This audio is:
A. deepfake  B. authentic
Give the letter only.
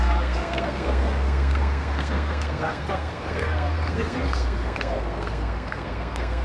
A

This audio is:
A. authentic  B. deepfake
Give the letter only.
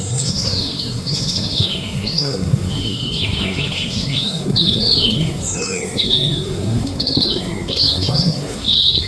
B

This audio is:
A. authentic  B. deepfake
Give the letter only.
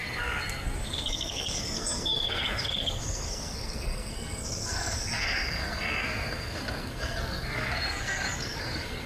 B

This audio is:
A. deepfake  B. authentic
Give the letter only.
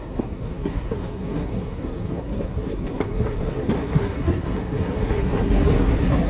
A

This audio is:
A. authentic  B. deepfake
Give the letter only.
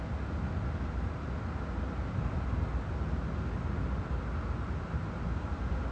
A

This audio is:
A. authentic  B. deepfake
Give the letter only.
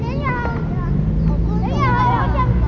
A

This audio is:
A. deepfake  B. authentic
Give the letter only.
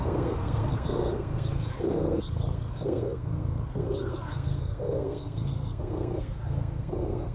A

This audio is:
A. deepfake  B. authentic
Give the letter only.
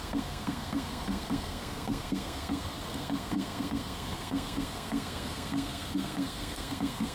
A